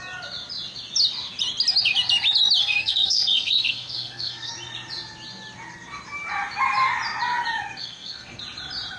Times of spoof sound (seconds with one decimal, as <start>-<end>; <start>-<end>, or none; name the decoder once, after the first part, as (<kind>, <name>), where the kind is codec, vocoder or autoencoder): 2.6-4.5 (codec, SNAC); 7.8-8.4